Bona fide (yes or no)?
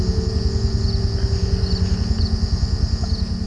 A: yes